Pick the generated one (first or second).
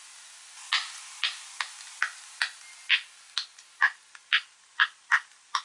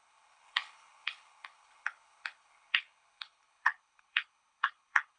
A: second